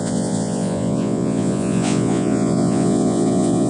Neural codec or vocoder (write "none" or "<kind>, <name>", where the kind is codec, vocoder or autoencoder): vocoder, Vocos